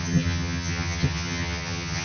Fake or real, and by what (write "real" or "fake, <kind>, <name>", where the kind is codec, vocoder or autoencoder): fake, vocoder, HiFi-GAN